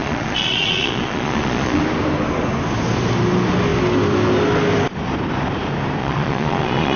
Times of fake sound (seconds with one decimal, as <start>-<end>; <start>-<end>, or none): 0.0-1.8; 6.0-7.0